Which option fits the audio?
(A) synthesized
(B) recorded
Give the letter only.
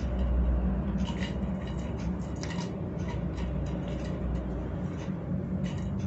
B